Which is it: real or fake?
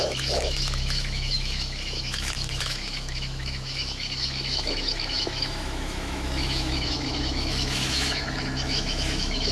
fake